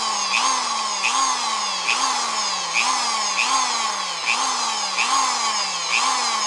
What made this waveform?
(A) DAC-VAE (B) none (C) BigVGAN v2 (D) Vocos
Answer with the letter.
B